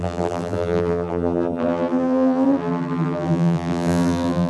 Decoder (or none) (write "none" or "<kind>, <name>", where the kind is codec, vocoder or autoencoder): vocoder, BigVGAN v2